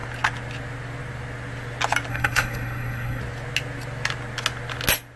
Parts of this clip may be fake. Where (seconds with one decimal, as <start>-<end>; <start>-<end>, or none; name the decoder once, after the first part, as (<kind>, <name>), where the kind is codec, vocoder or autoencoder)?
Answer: 2.1-3.2 (codec, SNAC)